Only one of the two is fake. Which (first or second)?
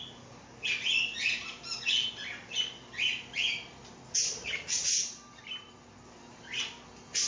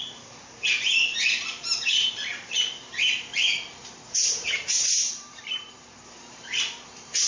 second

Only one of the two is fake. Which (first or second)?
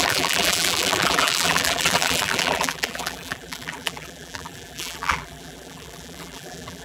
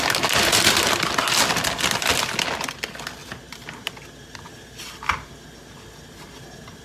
first